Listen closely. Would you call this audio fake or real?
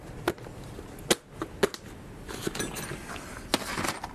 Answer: real